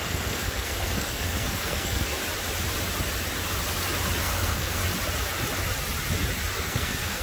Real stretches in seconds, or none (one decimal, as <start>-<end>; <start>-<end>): 2.2-4.2; 4.8-6.6